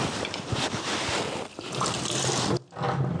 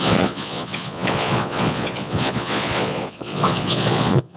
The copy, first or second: second